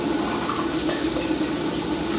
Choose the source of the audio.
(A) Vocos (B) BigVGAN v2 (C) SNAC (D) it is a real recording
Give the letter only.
D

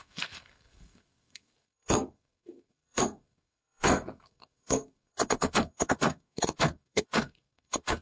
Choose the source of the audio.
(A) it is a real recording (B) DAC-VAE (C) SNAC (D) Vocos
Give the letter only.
C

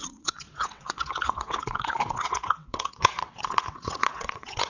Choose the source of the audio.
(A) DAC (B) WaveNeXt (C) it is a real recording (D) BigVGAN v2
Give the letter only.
B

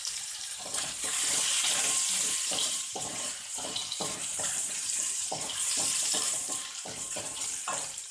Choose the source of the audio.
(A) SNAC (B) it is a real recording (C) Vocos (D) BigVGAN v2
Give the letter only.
D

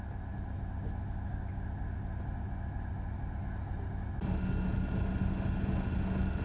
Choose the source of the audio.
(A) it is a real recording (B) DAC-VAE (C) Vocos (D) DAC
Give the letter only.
A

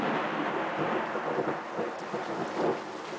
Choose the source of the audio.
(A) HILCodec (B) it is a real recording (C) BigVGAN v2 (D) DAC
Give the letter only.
B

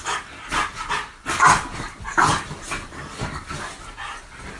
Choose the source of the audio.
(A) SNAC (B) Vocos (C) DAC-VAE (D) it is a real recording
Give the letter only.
D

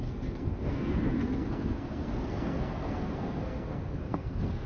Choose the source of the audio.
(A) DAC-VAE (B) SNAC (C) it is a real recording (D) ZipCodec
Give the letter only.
B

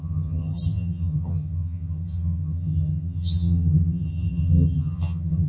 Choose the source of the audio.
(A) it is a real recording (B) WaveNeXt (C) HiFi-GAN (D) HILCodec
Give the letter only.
C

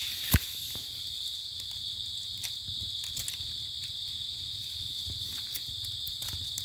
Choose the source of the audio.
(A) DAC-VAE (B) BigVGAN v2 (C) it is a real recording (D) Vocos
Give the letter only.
C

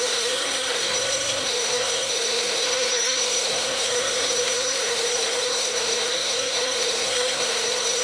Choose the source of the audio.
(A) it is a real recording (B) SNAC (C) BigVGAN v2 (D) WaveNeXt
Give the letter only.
B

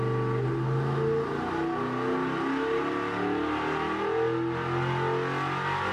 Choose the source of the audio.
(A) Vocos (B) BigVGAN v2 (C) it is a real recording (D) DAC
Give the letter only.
C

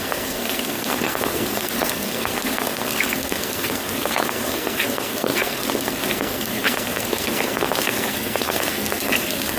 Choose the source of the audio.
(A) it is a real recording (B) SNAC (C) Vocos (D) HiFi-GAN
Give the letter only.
B